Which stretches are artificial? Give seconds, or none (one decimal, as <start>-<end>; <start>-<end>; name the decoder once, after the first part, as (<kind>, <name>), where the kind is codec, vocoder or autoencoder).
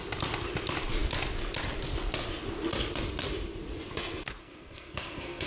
4.4-5.5 (codec, SNAC)